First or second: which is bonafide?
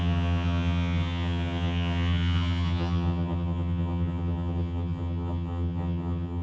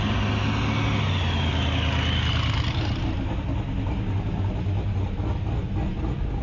second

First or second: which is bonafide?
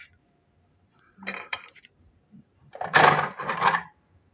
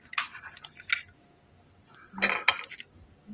second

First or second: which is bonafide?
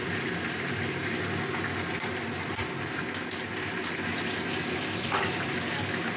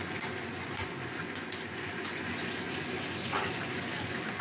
first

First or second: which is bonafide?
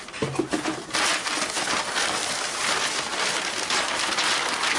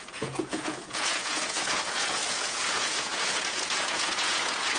first